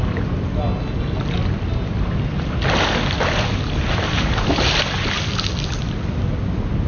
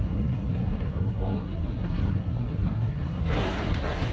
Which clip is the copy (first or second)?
second